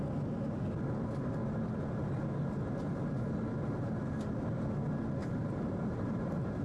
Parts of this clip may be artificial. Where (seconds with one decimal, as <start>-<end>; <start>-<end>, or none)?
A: 5.2-6.6